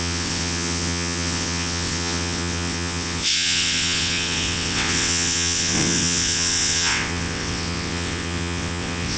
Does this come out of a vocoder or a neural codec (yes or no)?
yes